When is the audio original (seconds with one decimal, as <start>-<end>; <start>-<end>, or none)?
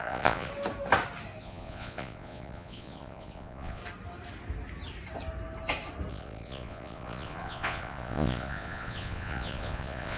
0.5-1.4; 3.8-6.1